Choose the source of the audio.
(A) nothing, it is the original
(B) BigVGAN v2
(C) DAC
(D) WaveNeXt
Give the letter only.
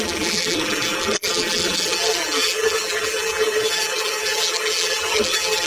B